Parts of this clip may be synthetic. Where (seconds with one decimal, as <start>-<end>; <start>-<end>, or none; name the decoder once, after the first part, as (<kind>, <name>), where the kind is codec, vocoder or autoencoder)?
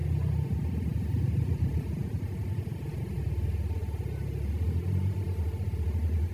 none